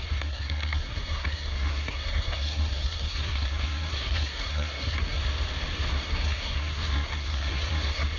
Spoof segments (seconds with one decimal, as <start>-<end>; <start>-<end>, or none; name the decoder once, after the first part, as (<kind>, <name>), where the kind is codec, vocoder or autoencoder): 0.0-5.2 (codec, SNAC); 5.9-8.2

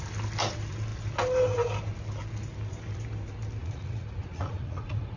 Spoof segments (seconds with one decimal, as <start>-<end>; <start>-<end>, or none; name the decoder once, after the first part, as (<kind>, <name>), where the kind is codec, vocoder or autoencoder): 3.6-5.2 (vocoder, Vocos)

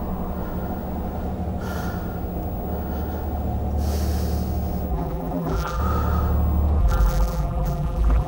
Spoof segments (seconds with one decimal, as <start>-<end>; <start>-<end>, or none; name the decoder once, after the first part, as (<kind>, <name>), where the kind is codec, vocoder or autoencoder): 4.9-5.8 (vocoder, BigVGAN v2); 6.8-8.3